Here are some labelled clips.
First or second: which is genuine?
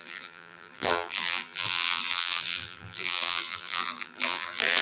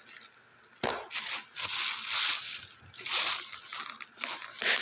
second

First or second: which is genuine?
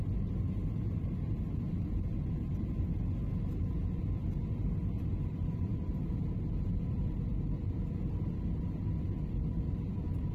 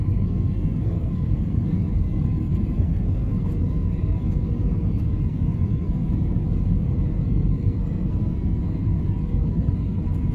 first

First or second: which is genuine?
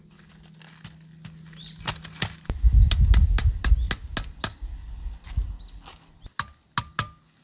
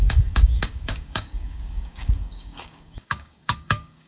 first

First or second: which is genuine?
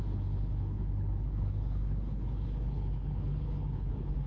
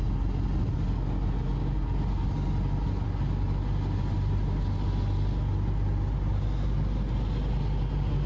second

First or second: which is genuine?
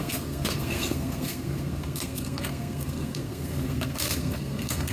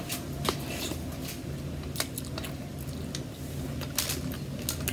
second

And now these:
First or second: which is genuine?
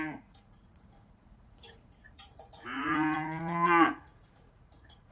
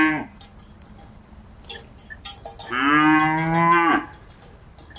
second